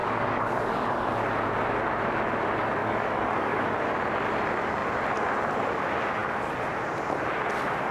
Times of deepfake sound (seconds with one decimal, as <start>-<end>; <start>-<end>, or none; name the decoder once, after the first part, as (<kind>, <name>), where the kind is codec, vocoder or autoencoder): 0.0-1.1 (codec, DAC); 2.8-3.6

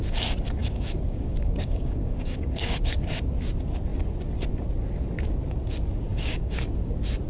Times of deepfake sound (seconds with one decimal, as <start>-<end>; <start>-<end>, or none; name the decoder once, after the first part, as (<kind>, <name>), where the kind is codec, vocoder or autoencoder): 0.6-3.2 (codec, DAC); 6.1-6.6

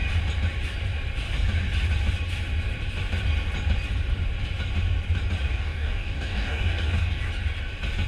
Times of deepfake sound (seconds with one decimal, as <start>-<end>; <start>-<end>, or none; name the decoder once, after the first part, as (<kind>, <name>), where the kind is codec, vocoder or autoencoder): 5.5-7.2 (codec, DAC)